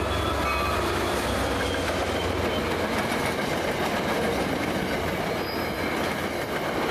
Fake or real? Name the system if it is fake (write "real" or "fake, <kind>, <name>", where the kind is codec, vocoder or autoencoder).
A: real